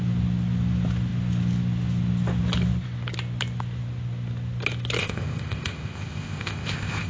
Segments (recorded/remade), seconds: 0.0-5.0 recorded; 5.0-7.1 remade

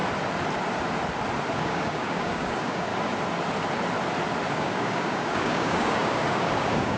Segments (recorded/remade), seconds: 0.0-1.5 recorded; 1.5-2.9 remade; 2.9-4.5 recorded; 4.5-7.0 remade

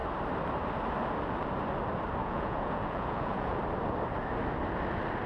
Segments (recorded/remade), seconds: 0.0-2.2 recorded; 2.2-3.6 remade; 3.6-5.3 recorded